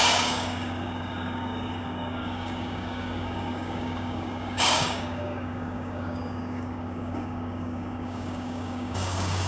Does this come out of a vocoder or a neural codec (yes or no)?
yes